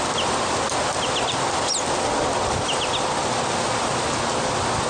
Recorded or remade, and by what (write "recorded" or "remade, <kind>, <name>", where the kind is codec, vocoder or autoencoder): recorded